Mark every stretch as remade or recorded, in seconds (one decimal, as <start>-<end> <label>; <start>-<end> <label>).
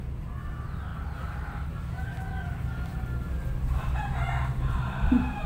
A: 0.0-5.5 recorded